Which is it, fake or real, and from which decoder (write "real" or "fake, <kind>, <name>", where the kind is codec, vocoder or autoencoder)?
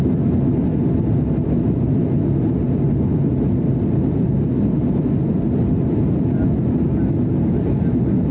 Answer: real